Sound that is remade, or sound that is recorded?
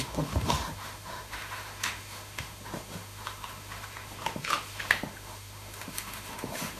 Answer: remade